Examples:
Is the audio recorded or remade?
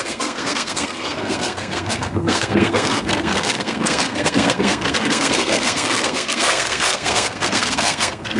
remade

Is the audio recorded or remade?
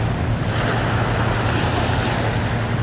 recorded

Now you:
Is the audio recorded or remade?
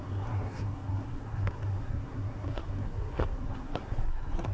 remade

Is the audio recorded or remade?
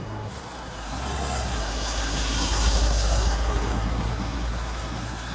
remade